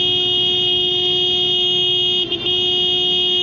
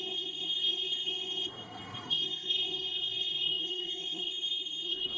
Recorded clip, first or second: first